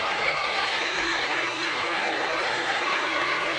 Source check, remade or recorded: remade